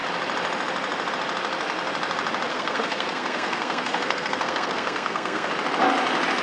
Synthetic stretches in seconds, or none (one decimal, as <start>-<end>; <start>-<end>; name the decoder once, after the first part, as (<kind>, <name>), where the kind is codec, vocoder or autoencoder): 2.5-5.5 (codec, SNAC)